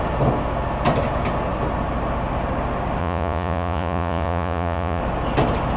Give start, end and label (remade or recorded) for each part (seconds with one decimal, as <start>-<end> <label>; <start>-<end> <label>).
0.0-3.0 recorded; 3.0-5.0 remade; 5.0-5.8 recorded